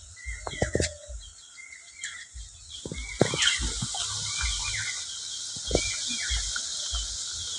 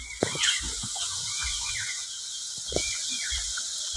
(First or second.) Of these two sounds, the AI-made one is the second